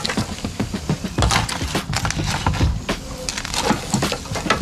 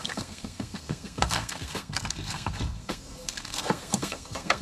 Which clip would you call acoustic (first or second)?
first